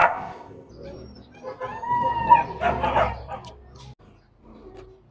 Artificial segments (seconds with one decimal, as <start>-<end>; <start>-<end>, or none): 0.0-0.7